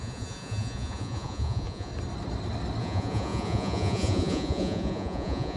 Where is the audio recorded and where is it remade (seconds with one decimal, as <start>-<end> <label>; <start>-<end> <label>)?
0.0-1.9 remade; 1.9-2.8 recorded; 2.8-5.6 remade